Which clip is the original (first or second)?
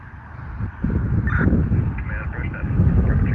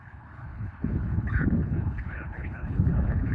first